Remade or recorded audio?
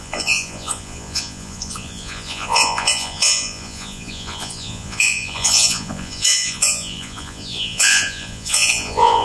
remade